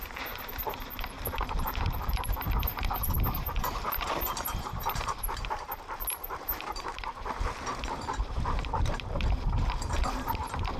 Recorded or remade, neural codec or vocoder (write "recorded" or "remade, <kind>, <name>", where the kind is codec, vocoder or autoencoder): remade, vocoder, BigVGAN v2